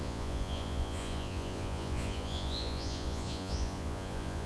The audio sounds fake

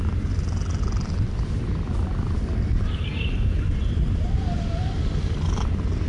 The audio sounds real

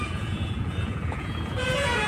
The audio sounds fake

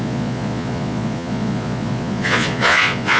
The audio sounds fake